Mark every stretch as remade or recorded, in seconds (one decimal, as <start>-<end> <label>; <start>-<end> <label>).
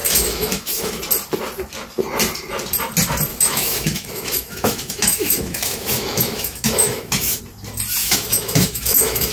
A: 0.0-1.0 remade; 1.0-3.3 recorded; 3.3-7.4 remade; 7.4-8.0 recorded; 8.0-9.3 remade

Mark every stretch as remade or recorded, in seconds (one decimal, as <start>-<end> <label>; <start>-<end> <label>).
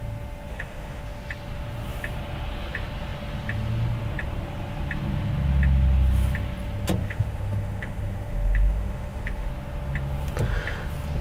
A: 0.0-0.5 recorded; 0.5-1.0 remade; 1.0-7.0 recorded; 7.0-9.5 remade; 9.5-11.2 recorded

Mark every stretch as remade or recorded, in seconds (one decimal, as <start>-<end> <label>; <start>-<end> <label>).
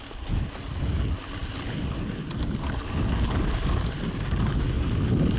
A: 0.0-5.4 recorded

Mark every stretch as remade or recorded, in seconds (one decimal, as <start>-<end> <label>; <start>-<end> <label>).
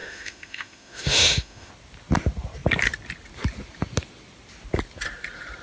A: 0.0-1.7 remade; 1.7-5.6 recorded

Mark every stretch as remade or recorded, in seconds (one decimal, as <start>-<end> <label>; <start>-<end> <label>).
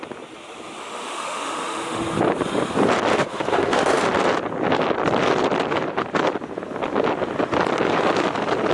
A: 0.0-0.8 recorded; 0.8-2.0 remade; 2.0-3.1 recorded; 3.1-4.0 remade; 4.0-8.7 recorded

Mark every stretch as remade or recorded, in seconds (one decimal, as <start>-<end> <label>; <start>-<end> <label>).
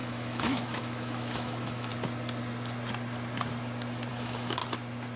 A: 0.0-1.9 remade; 1.9-4.1 recorded; 4.1-4.6 remade; 4.6-5.2 recorded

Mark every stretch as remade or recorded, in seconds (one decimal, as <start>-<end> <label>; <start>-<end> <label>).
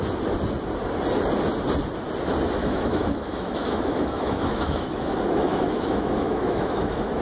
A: 0.0-2.6 recorded; 2.6-7.2 remade